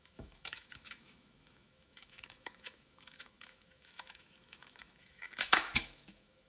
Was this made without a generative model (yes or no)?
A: no